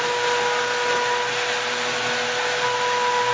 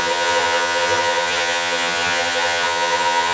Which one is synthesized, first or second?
second